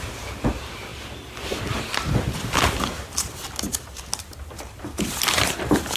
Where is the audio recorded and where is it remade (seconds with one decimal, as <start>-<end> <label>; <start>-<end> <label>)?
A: 0.0-6.0 recorded